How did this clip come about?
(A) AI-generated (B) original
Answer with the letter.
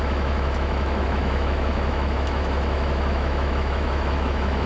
A